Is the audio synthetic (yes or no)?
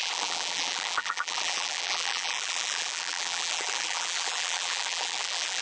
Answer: yes